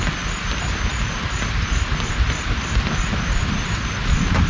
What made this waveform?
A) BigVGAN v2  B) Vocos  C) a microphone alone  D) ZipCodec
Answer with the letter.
C